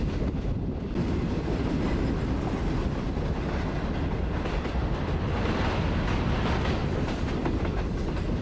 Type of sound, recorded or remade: recorded